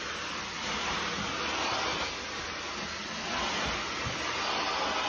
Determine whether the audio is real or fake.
real